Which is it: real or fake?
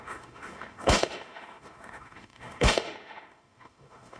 fake